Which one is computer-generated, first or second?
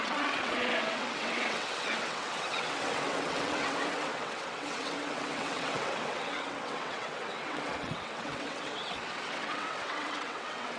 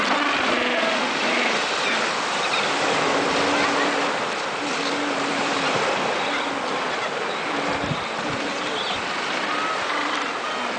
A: first